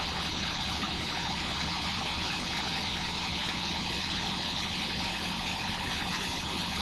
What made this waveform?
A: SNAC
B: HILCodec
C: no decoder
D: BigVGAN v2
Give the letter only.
B